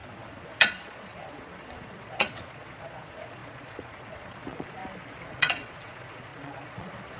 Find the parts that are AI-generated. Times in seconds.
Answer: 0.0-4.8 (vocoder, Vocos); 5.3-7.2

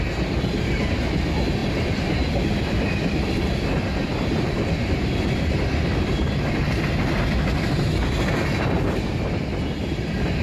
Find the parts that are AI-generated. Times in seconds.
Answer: 1.6-6.8 (vocoder, BigVGAN v2)

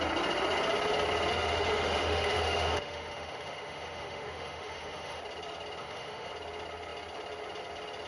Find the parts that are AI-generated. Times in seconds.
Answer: 1.3-5.2 (autoencoder, DAC-VAE); 5.8-6.3

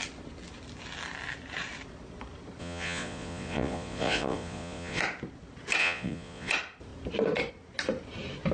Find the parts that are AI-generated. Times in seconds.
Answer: 2.6-5.0 (vocoder, Vocos); 5.8-6.5

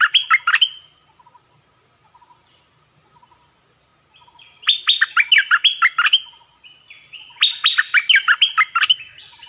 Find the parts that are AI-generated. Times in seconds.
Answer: none